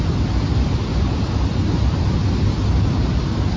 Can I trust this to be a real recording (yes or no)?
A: yes